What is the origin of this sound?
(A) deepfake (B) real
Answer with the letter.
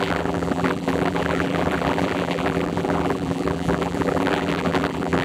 A